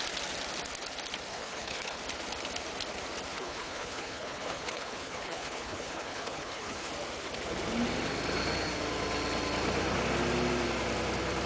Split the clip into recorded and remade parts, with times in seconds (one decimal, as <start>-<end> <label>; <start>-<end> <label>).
0.0-1.3 recorded; 1.3-2.0 remade; 2.0-3.3 recorded; 3.3-6.9 remade; 6.9-11.5 recorded